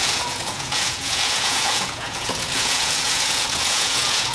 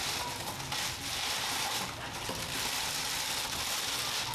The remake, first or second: first